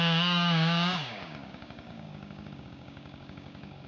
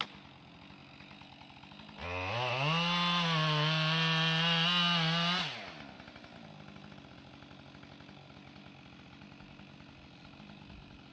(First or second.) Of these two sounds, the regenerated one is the first